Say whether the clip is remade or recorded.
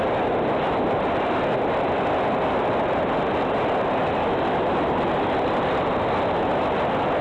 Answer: recorded